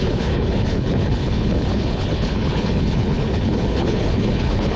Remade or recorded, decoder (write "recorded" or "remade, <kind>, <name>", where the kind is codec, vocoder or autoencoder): remade, codec, HILCodec